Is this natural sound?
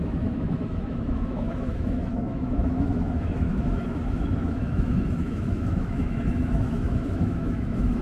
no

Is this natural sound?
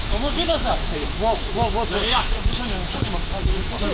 no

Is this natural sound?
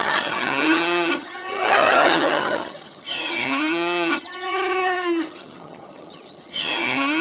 no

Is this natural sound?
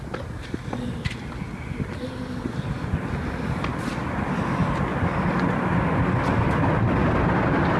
yes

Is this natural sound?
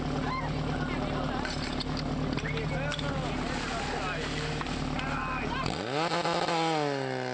yes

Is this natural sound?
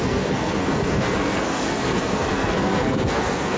no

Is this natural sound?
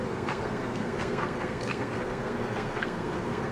no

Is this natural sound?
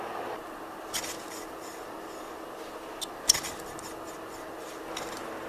yes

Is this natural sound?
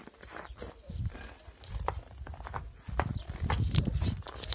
no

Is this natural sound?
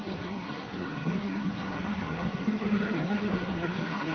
no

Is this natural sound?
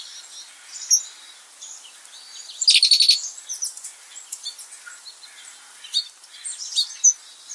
yes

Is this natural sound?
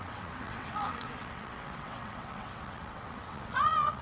no